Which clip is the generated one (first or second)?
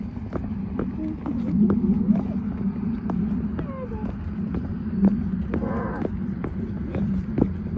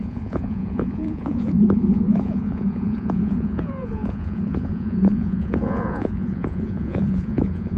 second